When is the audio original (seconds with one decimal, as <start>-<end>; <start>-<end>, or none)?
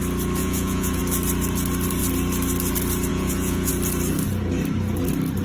0.0-0.4; 1.0-3.1; 3.7-5.4